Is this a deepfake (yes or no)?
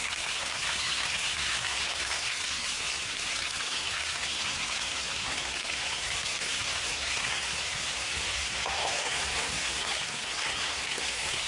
yes